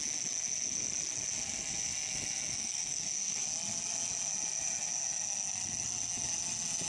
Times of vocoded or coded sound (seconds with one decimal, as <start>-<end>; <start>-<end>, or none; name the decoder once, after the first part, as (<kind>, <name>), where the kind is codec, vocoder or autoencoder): 2.5-3.4 (codec, SNAC)